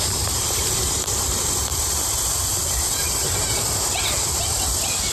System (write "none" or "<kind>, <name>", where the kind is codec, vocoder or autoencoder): vocoder, BigVGAN v2